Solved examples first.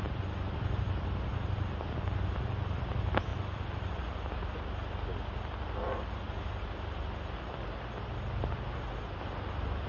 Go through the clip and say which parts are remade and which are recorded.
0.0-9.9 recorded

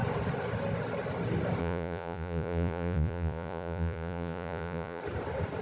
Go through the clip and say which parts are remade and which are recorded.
0.0-1.6 recorded; 1.6-5.0 remade; 5.0-5.6 recorded

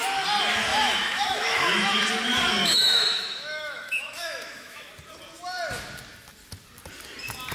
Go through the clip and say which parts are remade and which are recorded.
0.0-0.7 recorded; 0.7-2.0 remade; 2.0-2.6 recorded; 2.6-4.9 remade; 4.9-7.5 recorded